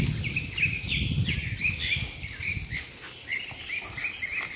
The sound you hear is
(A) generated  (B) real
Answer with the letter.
B